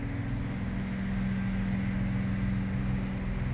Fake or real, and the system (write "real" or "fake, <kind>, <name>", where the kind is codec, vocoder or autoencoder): real